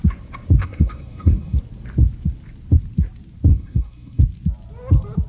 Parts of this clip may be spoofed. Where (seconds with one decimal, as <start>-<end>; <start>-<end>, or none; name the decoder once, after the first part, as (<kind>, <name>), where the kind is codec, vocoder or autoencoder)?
0.6-1.6 (codec, SNAC); 3.5-4.2